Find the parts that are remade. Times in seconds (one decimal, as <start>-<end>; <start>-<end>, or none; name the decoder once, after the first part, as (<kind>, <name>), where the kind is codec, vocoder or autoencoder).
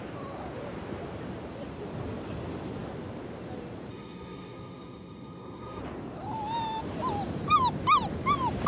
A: 3.9-5.8 (codec, SNAC)